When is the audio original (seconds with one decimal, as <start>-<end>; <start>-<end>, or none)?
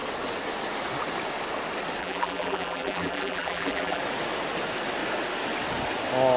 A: 0.0-2.0; 4.0-6.4